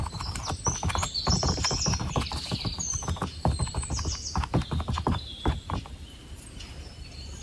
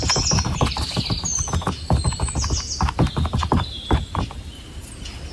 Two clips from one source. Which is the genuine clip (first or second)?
second